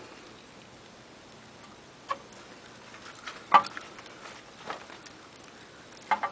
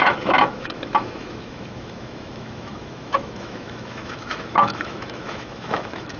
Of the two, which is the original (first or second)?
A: first